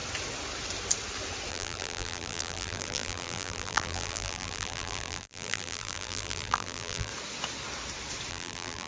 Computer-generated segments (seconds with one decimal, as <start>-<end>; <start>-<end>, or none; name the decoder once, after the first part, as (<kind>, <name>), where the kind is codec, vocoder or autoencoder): 1.5-7.1 (vocoder, BigVGAN v2); 8.3-8.9